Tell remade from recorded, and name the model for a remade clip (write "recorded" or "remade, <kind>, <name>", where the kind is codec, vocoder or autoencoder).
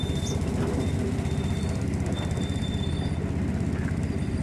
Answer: recorded